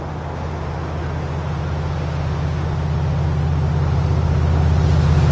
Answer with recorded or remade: recorded